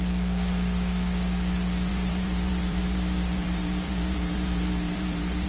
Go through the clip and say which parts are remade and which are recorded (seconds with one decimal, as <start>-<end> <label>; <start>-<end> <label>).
0.0-1.9 recorded; 1.9-5.5 remade